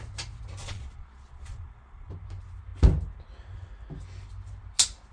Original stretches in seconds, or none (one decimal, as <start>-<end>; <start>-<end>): 0.0-0.6; 2.1-5.1